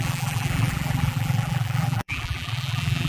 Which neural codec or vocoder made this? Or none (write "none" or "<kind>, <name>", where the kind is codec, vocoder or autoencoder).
vocoder, BigVGAN v2